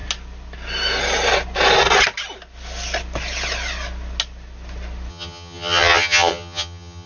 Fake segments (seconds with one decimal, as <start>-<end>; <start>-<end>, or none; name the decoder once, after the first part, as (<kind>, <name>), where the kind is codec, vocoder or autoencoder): 5.1-7.1 (vocoder, HiFi-GAN)